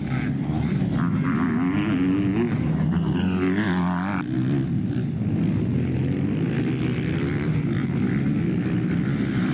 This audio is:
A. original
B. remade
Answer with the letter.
A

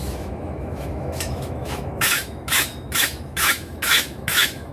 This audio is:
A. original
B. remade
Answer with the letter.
B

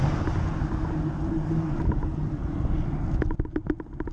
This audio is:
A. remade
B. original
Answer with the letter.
B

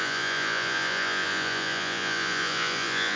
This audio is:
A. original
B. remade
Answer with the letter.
B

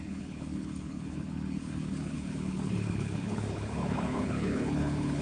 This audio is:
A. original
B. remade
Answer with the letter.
B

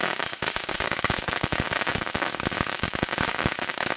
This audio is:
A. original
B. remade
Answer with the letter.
B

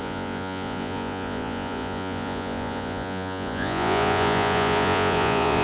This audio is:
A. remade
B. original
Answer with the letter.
A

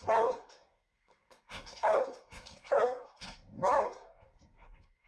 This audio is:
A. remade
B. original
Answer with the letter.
A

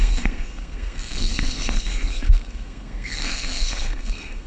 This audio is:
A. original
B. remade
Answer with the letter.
B